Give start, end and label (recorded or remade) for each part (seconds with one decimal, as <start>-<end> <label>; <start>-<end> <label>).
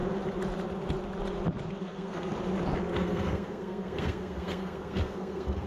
0.0-1.8 recorded; 1.8-2.3 remade; 2.3-2.9 recorded; 2.9-5.7 remade